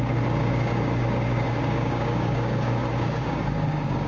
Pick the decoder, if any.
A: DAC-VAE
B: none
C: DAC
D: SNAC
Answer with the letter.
C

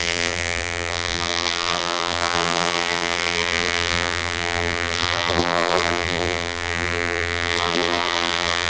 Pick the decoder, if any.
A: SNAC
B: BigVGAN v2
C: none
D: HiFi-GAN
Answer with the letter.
B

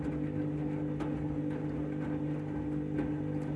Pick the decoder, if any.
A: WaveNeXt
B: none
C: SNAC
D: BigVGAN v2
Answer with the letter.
B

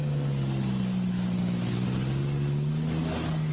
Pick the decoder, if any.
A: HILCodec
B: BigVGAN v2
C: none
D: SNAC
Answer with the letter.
C